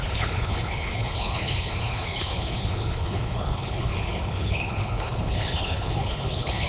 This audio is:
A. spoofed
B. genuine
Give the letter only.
A